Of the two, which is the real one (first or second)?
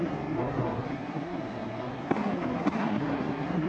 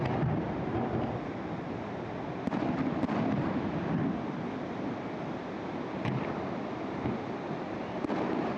second